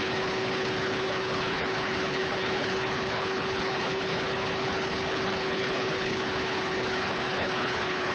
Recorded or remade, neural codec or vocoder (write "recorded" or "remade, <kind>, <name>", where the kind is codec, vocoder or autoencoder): remade, codec, HILCodec